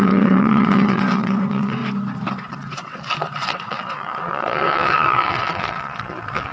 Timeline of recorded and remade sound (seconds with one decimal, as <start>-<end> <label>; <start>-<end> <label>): 0.0-1.8 remade; 1.8-2.5 recorded; 2.5-6.5 remade